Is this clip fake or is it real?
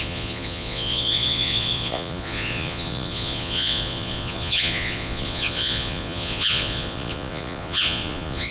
fake